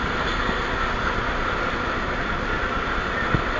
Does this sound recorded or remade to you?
recorded